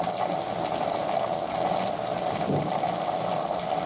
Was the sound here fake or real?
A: real